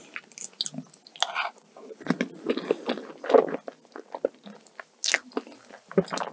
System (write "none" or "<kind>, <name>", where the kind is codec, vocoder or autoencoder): none